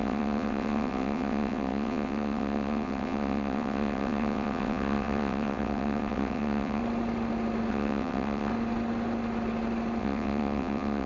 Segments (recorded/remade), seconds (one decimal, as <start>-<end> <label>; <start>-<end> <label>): 0.0-6.8 remade; 6.8-7.7 recorded; 7.7-8.5 remade; 8.5-10.0 recorded; 10.0-11.1 remade